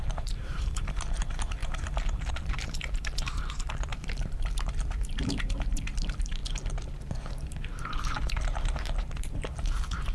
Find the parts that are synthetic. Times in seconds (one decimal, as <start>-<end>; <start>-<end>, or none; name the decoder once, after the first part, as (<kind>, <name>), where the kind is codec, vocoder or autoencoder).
0.0-6.4 (vocoder, BigVGAN v2); 7.3-10.1